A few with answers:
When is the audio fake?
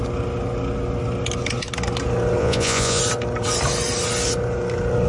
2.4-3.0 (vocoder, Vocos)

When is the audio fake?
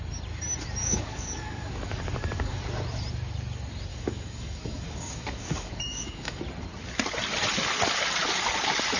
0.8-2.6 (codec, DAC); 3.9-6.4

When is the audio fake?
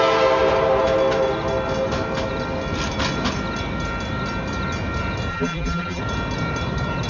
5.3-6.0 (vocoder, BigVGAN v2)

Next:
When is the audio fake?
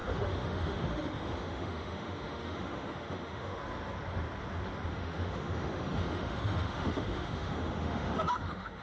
0.0-3.6 (autoencoder, DAC-VAE); 4.9-8.8